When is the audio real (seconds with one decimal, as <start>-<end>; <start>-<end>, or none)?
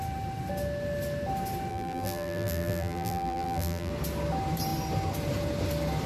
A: 0.0-1.7; 3.9-6.1